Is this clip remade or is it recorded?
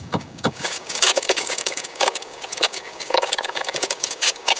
remade